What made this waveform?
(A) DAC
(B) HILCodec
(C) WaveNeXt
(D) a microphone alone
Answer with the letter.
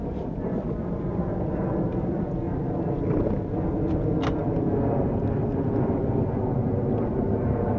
D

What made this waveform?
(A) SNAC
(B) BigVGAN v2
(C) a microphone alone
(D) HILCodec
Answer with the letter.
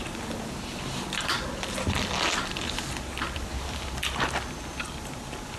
C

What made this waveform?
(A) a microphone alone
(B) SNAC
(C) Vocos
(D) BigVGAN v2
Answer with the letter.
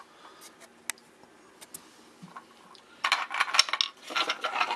A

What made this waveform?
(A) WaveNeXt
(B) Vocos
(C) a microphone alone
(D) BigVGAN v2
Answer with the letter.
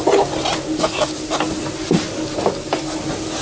C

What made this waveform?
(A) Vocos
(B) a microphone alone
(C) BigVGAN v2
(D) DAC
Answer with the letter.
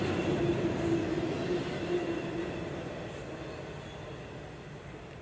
C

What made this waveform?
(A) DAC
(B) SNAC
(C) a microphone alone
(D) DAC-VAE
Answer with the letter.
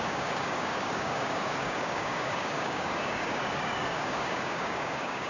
A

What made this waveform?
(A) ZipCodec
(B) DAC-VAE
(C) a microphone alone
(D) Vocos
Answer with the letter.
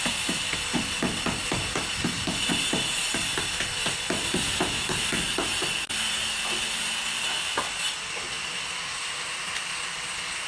C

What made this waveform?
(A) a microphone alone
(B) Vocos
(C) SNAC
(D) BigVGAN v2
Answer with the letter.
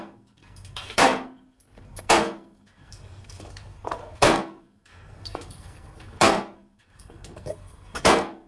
C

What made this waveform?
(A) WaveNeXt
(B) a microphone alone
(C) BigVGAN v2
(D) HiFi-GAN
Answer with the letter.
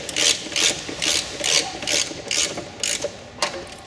B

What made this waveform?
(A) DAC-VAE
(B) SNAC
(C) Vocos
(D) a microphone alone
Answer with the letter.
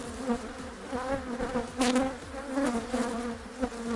D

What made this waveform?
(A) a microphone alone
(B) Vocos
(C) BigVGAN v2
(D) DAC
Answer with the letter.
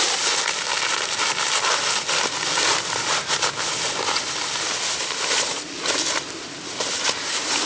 A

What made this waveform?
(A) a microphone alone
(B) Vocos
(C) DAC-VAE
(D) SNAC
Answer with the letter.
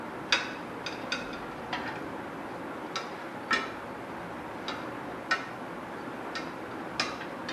A